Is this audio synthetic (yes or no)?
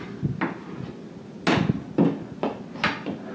no